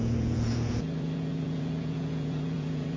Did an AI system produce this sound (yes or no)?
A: yes